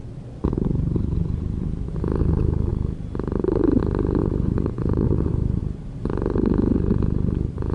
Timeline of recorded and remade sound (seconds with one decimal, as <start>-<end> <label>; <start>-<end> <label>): 0.0-4.2 recorded; 4.2-5.6 remade; 5.6-7.7 recorded